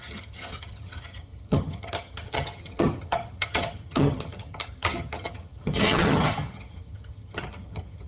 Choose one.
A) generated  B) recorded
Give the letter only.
A